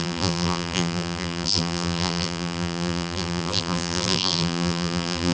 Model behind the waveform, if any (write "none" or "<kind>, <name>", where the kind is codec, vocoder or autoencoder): vocoder, BigVGAN v2